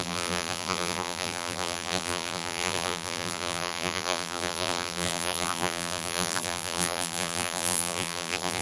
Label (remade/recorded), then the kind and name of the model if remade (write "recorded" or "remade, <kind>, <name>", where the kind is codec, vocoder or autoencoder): remade, vocoder, BigVGAN v2